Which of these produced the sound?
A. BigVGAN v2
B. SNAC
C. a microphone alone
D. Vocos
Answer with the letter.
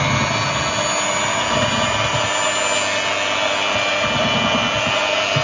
C